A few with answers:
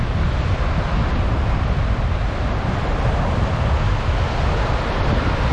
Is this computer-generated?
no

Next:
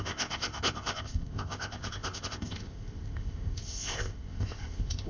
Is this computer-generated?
yes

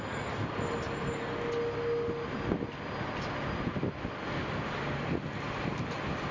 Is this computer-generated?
no